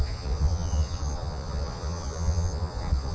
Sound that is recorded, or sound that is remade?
remade